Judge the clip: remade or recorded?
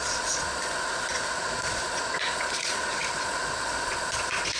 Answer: remade